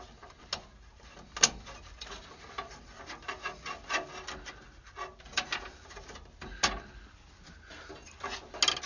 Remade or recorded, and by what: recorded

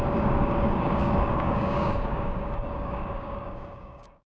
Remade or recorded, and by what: remade, codec, DAC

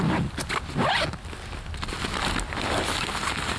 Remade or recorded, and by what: recorded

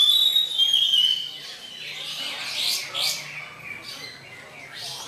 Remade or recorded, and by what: recorded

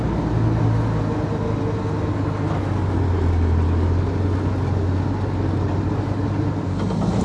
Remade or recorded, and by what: recorded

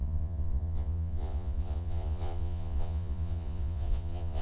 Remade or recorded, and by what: remade, vocoder, Vocos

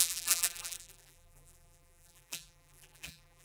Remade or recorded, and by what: remade, vocoder, BigVGAN v2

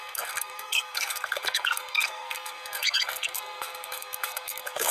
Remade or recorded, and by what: remade, codec, SNAC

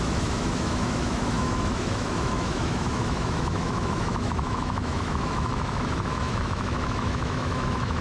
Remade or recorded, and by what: remade, autoencoder, DAC-VAE